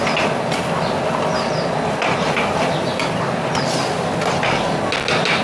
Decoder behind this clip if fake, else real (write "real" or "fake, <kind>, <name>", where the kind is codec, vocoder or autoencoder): real